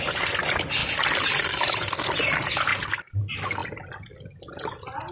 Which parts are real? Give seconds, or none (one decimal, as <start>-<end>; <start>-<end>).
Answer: 0.0-5.1